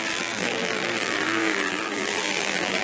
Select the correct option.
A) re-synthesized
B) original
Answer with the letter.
A